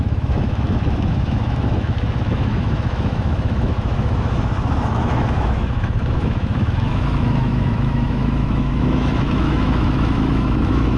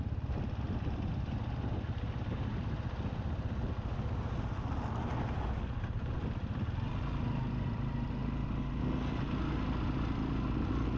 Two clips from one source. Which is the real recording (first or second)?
second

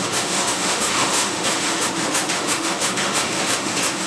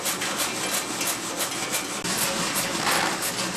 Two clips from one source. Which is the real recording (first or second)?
second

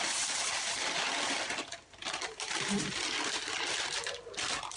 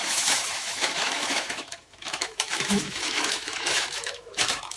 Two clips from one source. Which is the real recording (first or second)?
first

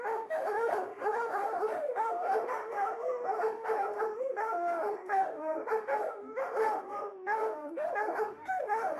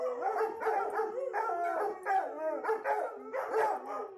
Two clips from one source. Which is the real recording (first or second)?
second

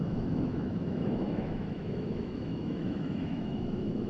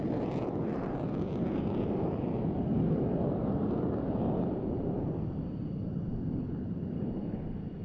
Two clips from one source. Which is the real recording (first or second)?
second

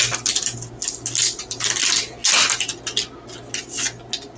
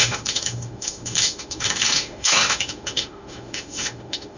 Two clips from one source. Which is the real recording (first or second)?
first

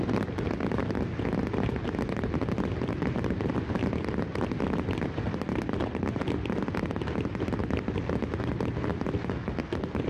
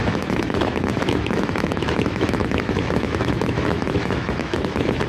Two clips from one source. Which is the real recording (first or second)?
first